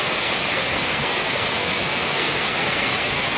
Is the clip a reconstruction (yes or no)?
yes